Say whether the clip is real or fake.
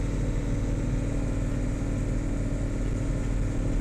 real